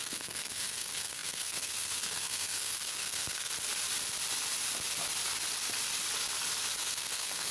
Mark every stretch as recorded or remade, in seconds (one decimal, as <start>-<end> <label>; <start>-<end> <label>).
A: 0.0-3.5 remade; 3.5-6.8 recorded; 6.8-7.5 remade